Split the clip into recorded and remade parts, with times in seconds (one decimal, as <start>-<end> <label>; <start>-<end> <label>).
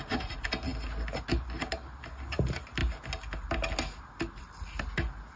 0.0-5.4 recorded